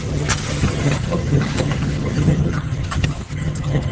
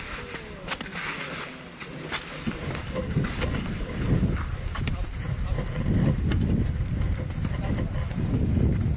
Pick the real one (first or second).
second